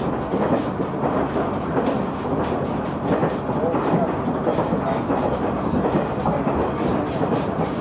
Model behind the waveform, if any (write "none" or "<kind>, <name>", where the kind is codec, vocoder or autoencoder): none